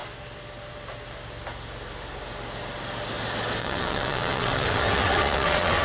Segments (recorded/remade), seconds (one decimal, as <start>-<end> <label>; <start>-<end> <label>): 0.0-3.6 recorded; 3.6-5.8 remade